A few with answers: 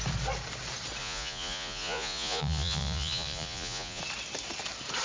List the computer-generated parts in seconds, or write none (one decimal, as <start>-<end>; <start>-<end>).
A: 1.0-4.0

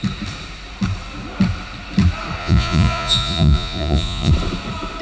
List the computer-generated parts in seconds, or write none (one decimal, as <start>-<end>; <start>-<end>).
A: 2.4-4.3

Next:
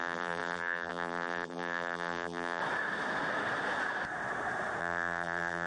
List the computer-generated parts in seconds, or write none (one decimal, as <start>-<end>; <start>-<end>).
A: 0.0-2.6; 4.8-5.7